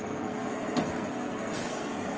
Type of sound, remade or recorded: remade